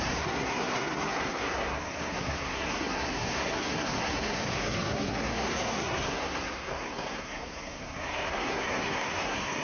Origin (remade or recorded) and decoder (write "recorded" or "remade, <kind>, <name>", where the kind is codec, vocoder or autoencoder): remade, codec, SNAC